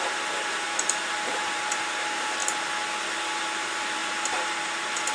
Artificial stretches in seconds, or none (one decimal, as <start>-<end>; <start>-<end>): 0.0-2.4; 3.0-5.1